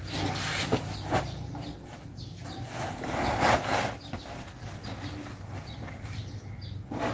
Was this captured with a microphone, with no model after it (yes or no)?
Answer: yes